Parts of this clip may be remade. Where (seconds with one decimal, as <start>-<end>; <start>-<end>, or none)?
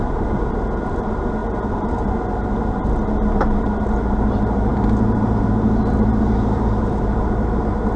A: 0.0-8.0